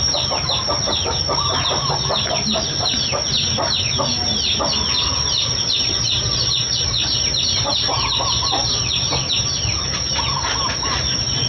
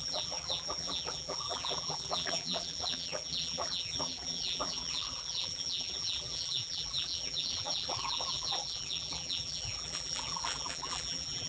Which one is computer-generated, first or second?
second